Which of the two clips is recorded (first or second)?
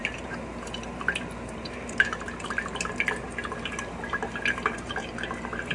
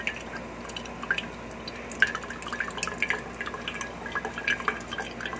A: second